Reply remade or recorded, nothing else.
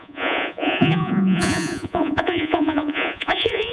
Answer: remade